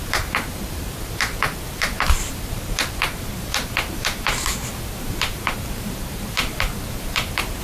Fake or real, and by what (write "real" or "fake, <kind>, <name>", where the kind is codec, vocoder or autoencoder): fake, vocoder, BigVGAN v2